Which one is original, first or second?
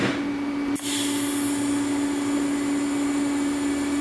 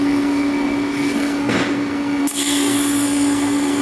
first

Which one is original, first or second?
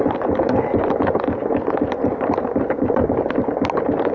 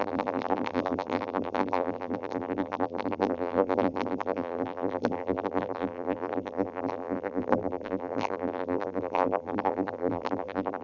first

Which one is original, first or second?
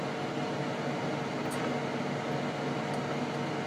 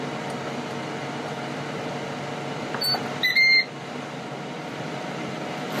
first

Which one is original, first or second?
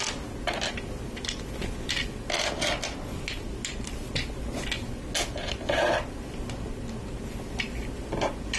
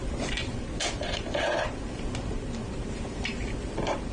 first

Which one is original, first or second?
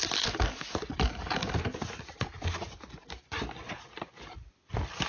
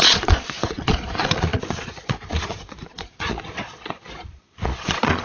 first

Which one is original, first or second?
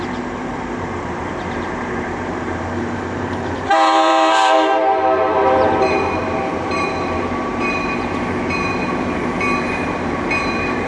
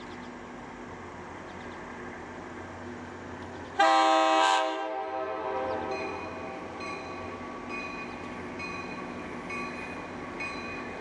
second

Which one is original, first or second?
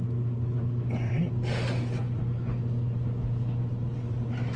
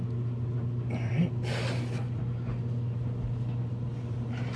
first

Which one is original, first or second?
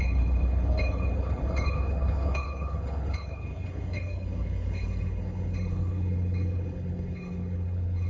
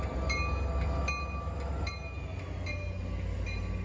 second